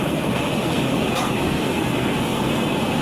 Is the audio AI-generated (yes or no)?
yes